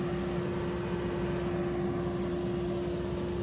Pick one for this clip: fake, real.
real